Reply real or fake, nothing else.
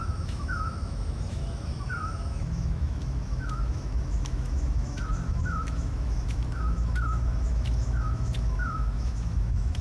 fake